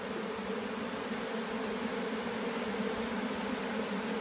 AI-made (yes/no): no